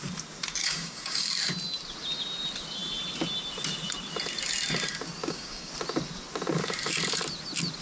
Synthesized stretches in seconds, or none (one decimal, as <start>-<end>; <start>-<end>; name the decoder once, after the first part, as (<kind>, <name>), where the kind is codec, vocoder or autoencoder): 0.6-1.3 (codec, DAC); 5.2-5.7